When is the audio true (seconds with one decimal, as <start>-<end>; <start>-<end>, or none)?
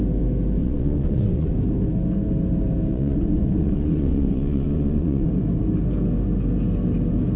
0.0-0.6; 1.5-2.9; 5.3-7.4